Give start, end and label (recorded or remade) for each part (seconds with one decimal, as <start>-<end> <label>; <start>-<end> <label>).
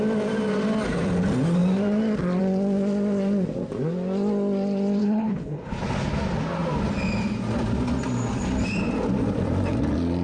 0.0-5.0 recorded; 5.0-5.8 remade; 5.8-10.2 recorded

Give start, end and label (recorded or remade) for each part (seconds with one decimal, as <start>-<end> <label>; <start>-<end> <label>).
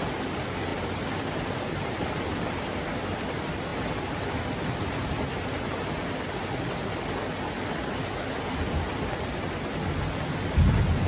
0.0-0.7 recorded; 0.7-2.2 remade; 2.2-3.7 recorded; 3.7-4.2 remade; 4.2-11.1 recorded